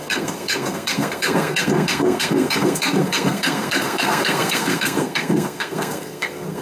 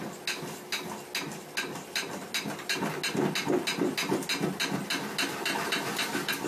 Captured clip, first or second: second